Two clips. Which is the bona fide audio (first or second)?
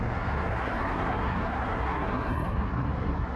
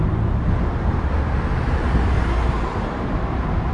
second